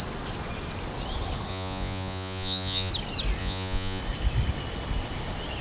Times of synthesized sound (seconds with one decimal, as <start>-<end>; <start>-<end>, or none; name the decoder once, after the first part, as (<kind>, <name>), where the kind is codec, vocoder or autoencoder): 1.5-2.9 (vocoder, Vocos); 3.4-4.0